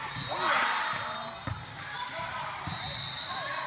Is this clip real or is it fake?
real